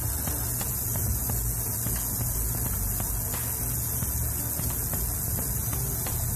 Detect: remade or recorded recorded